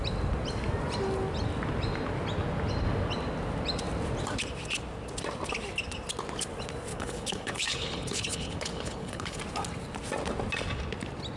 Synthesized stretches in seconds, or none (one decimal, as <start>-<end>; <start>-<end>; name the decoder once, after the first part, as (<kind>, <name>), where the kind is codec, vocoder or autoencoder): 6.9-9.4 (codec, HILCodec)